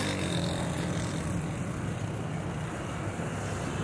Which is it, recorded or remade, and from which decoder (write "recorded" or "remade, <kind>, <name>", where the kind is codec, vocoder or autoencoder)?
recorded